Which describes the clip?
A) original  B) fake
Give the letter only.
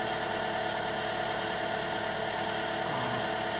A